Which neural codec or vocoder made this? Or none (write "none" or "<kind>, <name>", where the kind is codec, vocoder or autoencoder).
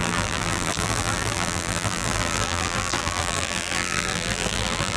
vocoder, BigVGAN v2